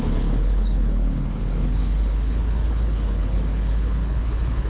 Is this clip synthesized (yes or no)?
yes